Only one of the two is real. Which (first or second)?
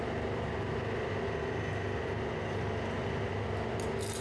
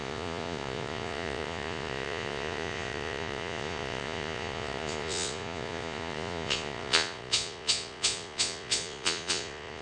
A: first